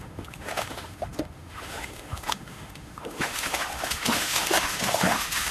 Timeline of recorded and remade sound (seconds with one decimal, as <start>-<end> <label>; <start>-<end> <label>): 0.0-5.5 remade